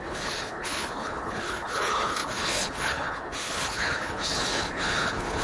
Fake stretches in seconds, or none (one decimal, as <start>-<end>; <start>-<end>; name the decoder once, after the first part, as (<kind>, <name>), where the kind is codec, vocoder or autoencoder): 0.0-5.4 (codec, HILCodec)

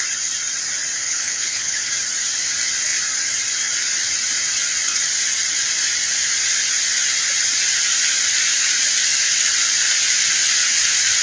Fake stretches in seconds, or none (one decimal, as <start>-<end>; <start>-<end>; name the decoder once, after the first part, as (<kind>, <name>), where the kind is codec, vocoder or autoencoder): 1.0-1.9 (codec, HILCodec)

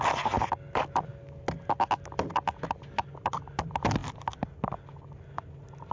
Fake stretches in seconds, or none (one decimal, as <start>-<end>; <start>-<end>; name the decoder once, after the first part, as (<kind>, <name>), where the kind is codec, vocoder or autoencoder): none

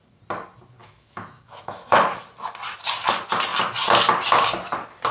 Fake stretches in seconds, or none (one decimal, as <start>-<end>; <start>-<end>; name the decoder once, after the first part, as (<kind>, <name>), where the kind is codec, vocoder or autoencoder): 0.8-2.2 (autoencoder, DAC-VAE)

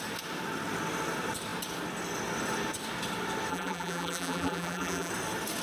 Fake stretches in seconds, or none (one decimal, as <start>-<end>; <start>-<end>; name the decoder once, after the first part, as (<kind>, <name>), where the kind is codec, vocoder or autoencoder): 3.5-5.1 (vocoder, BigVGAN v2)

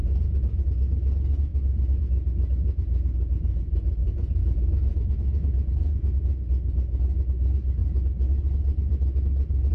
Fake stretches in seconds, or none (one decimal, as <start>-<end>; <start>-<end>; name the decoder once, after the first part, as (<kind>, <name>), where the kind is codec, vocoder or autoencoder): 0.0-0.6 (vocoder, Vocos); 4.0-6.3

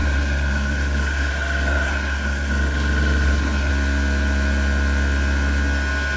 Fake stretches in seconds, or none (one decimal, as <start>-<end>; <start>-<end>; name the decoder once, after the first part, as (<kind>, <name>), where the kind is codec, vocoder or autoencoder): 0.0-3.7 (codec, SNAC)

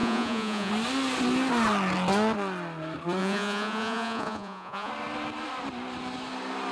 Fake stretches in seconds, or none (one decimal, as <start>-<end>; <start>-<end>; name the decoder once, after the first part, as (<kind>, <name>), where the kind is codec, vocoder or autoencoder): 0.0-0.7 (vocoder, Vocos); 3.2-4.9